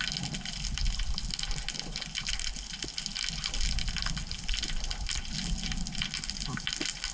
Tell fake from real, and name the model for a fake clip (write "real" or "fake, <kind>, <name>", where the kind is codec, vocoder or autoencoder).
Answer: real